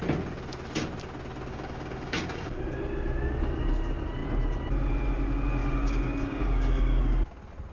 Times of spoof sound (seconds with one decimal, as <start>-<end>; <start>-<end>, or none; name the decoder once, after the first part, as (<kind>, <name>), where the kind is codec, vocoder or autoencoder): 1.5-2.6 (codec, DAC); 5.6-7.0